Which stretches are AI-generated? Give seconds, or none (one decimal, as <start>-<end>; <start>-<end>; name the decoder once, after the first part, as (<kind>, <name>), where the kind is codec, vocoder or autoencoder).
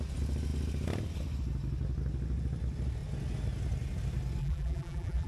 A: 4.4-5.3 (vocoder, BigVGAN v2)